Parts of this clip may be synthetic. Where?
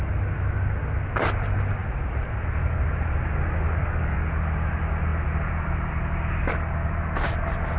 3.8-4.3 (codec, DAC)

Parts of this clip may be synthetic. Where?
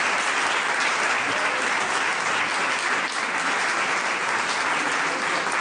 none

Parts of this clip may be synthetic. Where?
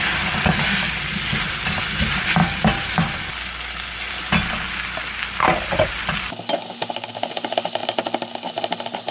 none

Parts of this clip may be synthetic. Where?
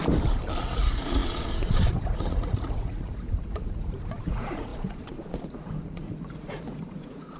0.6-7.4 (vocoder, Vocos)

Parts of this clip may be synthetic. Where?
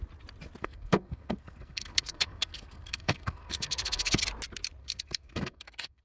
0.6-4.2 (codec, SNAC); 4.8-6.0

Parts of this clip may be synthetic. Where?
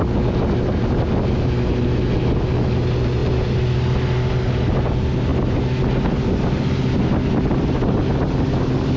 none